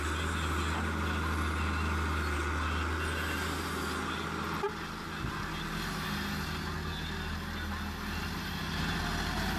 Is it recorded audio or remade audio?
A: recorded